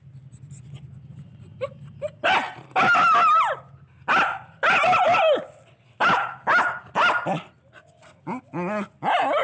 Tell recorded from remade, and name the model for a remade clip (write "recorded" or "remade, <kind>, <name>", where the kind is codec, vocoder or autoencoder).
recorded